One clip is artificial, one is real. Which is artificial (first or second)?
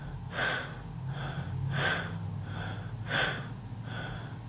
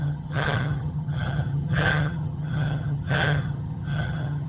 second